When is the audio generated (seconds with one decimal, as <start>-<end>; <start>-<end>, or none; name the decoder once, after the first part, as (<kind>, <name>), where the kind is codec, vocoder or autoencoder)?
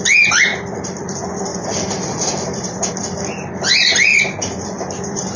0.5-1.0 (vocoder, BigVGAN v2); 1.5-2.9; 4.1-5.0